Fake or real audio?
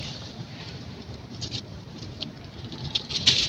fake